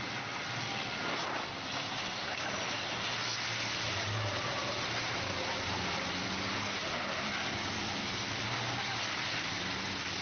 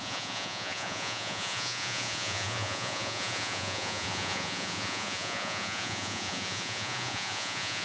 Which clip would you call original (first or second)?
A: first